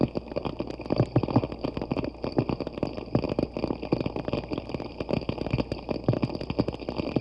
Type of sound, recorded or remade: recorded